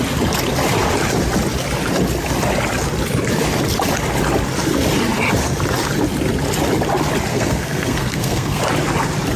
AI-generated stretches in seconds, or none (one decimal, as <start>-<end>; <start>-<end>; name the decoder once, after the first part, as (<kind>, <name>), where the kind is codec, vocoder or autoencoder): 7.3-8.6 (codec, SNAC)